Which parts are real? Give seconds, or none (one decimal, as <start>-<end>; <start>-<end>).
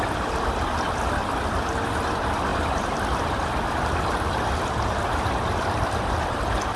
0.0-6.8